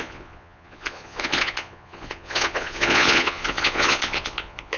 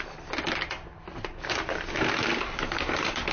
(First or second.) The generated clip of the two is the first